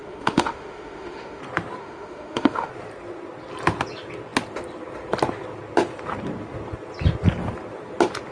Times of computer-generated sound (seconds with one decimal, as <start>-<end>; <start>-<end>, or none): 0.0-1.4; 1.8-2.7